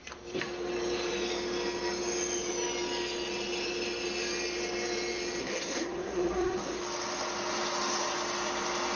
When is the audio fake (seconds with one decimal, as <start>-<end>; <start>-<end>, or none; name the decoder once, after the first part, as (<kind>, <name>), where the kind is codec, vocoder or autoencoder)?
5.4-6.8 (codec, SNAC)